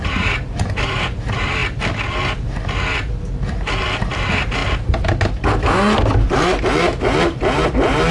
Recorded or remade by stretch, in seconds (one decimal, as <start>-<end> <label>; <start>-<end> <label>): 0.0-1.6 remade; 1.6-3.5 recorded; 3.5-4.6 remade; 4.6-7.2 recorded; 7.2-8.1 remade